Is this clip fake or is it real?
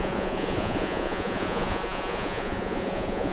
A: fake